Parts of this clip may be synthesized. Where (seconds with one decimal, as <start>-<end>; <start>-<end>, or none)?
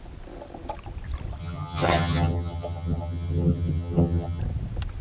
1.4-4.4